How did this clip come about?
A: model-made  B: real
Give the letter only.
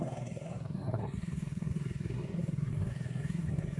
A